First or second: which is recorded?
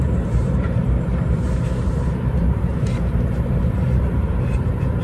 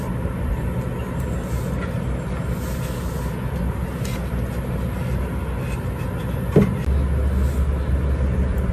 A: second